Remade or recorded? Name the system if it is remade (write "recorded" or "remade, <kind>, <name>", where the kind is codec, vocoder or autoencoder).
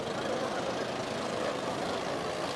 recorded